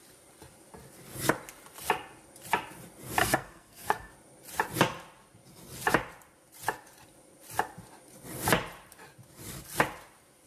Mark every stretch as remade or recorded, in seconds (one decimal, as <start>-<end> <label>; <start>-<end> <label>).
0.0-3.2 recorded; 3.2-4.1 remade; 4.1-10.5 recorded